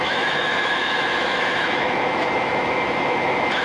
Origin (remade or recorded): remade